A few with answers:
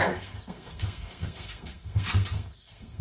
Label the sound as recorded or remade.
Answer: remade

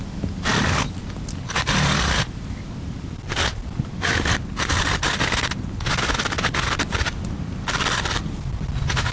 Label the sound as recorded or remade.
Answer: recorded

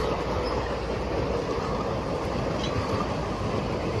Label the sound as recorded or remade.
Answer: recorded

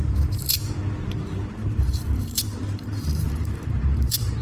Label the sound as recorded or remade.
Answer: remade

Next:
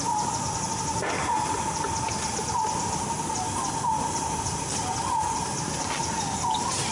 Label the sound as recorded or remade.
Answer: recorded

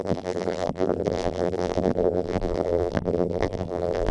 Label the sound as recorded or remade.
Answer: remade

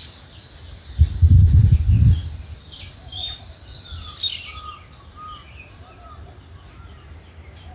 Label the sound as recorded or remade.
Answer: recorded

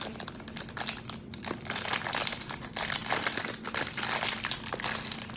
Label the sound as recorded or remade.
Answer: recorded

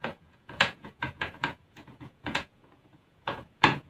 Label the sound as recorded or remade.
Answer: remade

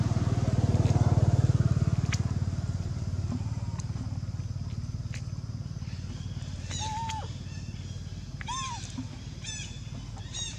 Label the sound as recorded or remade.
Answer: recorded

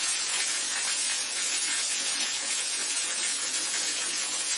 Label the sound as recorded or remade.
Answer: remade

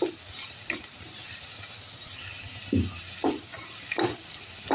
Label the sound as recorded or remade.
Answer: recorded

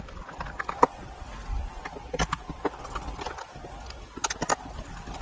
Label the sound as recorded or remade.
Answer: recorded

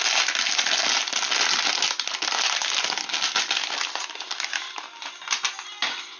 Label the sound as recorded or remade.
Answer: recorded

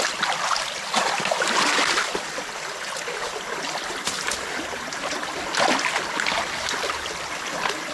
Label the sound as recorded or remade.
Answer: recorded